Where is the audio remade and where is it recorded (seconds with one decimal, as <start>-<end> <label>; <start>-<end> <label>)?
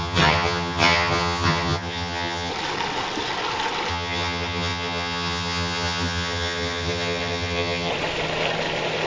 0.0-2.5 remade; 2.5-3.9 recorded; 3.9-7.9 remade; 7.9-9.1 recorded